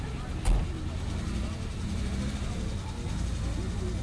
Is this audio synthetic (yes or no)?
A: no